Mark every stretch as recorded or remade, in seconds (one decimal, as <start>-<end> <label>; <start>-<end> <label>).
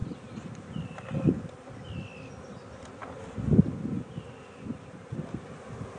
0.0-6.0 recorded